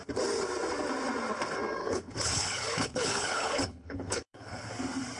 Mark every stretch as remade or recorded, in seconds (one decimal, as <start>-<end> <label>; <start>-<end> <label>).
0.0-1.8 recorded; 1.8-4.7 remade; 4.7-5.2 recorded